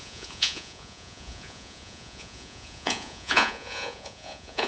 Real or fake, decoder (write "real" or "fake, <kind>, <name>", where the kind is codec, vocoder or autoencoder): fake, vocoder, Vocos